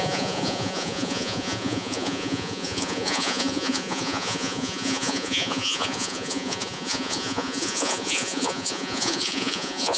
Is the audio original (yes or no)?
no